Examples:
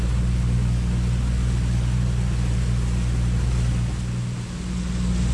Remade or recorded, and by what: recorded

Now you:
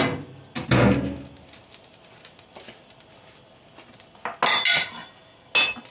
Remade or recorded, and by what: recorded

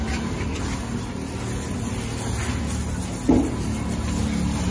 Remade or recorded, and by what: recorded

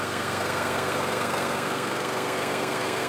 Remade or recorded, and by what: remade, codec, SNAC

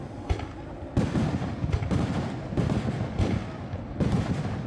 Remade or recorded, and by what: recorded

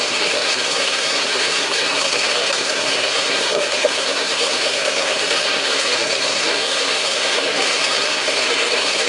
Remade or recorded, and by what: remade, codec, SNAC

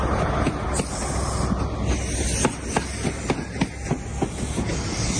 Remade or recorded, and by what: recorded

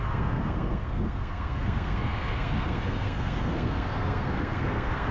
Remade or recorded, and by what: remade, codec, SNAC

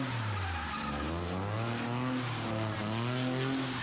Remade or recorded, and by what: recorded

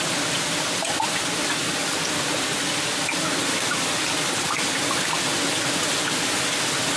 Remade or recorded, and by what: recorded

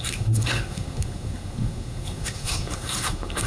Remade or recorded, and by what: remade, codec, SNAC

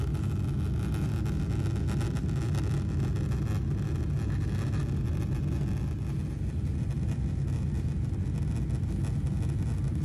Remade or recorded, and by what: recorded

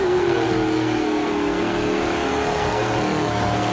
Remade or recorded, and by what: remade, codec, SNAC